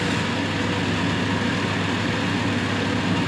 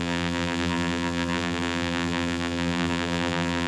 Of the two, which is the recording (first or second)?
first